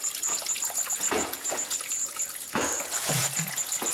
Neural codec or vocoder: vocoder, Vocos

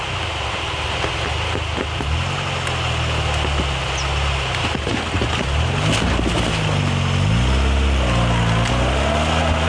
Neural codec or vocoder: none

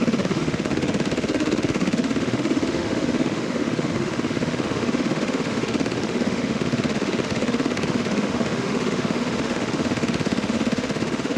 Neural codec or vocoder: autoencoder, DAC-VAE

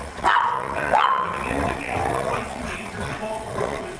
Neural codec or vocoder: vocoder, WaveNeXt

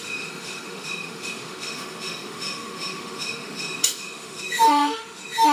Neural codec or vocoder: autoencoder, DAC-VAE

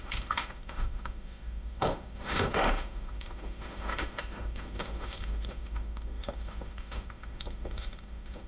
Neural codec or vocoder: autoencoder, DAC-VAE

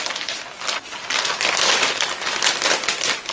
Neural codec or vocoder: none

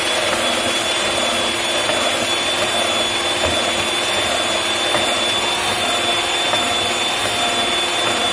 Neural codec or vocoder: none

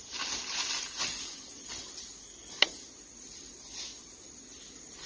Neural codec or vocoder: none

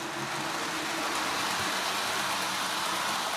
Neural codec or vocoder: none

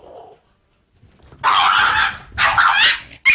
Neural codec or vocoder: none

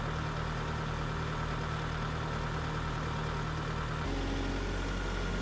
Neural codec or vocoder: none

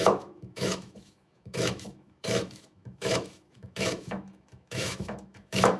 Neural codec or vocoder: autoencoder, DAC-VAE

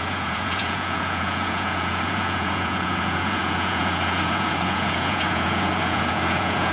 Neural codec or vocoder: vocoder, Vocos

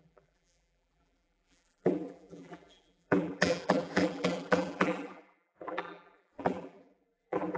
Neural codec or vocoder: vocoder, BigVGAN v2